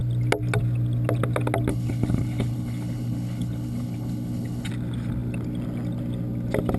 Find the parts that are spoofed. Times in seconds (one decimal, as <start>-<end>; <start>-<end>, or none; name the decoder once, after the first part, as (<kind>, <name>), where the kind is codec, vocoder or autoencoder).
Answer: 1.7-4.7 (codec, HILCodec)